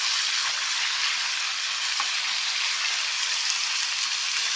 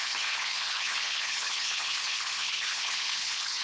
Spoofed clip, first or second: second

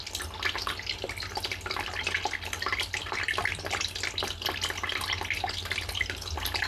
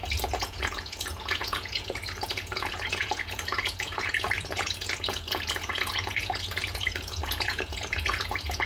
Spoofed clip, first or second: second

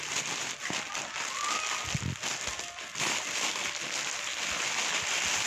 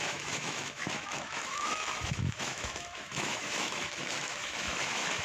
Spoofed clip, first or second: second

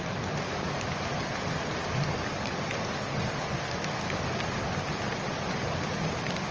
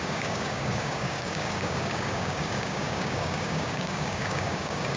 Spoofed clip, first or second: second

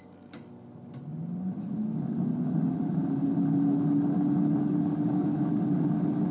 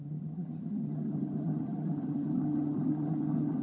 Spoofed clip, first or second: second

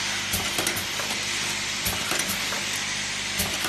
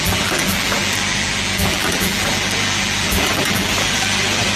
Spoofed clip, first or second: second